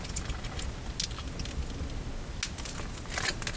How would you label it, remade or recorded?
recorded